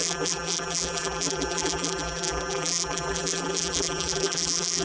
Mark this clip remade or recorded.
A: remade